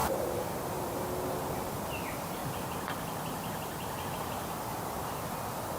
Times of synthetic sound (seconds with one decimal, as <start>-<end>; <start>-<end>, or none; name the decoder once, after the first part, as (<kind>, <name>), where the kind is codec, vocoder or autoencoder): 0.0-1.0 (vocoder, BigVGAN v2); 2.4-4.1